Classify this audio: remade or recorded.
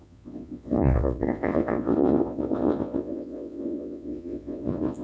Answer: remade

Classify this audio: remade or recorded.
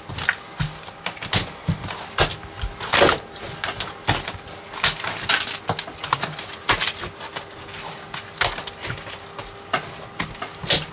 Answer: recorded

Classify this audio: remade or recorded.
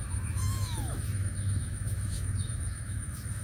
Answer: remade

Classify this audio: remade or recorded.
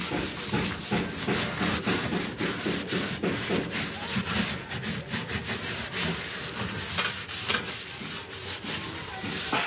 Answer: recorded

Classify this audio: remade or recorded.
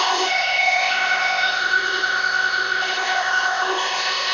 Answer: remade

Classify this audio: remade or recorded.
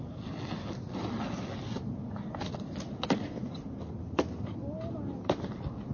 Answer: recorded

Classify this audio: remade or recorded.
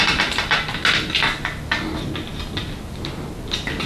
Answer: recorded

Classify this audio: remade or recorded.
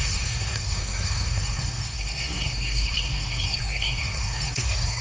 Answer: remade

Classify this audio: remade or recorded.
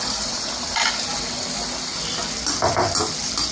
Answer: recorded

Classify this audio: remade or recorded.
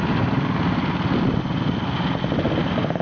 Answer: recorded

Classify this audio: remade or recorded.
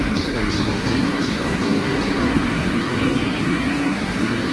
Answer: remade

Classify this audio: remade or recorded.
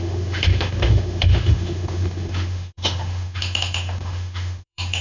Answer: remade